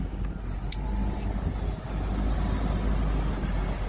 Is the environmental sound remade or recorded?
recorded